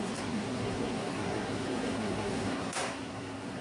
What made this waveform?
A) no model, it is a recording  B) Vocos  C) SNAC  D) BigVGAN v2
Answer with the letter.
C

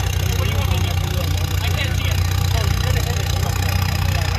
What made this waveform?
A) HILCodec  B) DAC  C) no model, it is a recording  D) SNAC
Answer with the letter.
C